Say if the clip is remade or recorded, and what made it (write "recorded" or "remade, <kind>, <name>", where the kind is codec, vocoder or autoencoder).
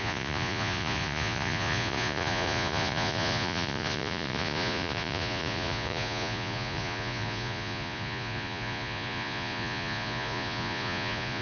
remade, vocoder, Vocos